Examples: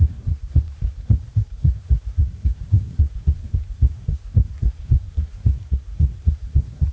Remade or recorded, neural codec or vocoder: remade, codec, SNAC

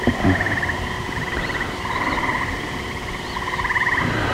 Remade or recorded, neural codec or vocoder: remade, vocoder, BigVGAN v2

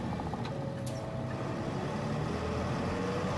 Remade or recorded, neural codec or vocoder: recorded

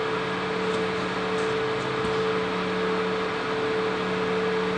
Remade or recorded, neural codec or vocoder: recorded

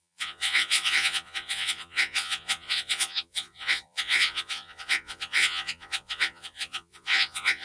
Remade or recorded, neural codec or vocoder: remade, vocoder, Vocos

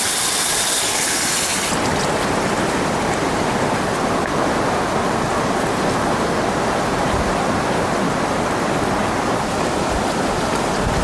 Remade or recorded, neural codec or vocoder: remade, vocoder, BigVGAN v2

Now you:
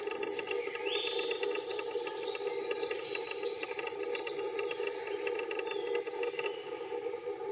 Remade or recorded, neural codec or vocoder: recorded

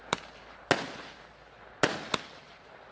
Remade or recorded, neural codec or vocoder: recorded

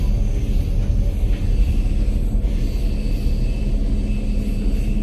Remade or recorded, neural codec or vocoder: recorded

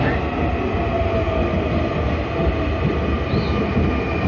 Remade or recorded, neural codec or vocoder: recorded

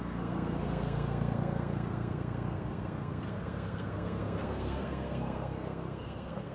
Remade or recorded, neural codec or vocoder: remade, codec, SNAC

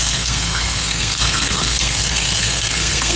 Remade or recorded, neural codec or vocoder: remade, codec, SNAC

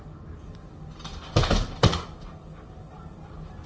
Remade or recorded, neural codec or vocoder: recorded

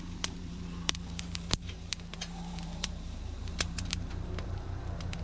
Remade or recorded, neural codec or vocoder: remade, vocoder, BigVGAN v2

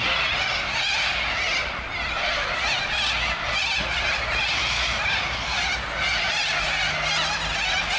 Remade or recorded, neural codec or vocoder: recorded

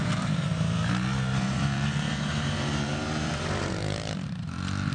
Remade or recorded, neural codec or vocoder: remade, vocoder, BigVGAN v2